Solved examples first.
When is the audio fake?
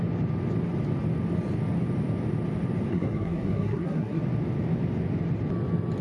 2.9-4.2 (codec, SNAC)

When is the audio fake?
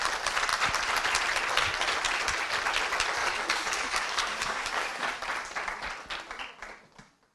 3.2-5.1 (codec, DAC)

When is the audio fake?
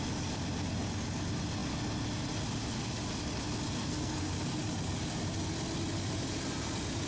3.8-4.3 (codec, SNAC)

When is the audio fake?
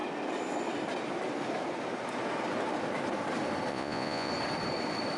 3.7-4.3 (vocoder, Vocos)